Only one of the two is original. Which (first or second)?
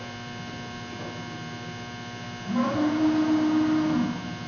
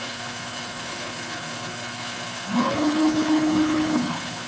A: first